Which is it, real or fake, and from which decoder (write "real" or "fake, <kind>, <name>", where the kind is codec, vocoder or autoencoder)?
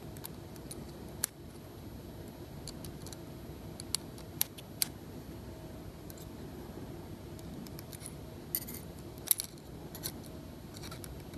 real